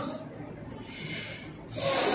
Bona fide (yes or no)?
yes